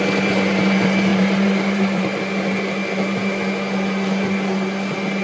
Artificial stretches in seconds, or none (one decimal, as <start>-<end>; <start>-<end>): 1.1-2.2